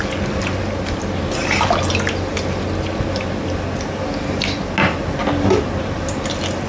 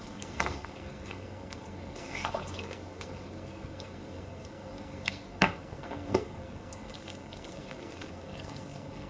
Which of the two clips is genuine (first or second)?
first